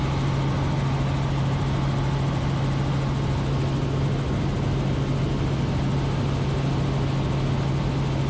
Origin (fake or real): real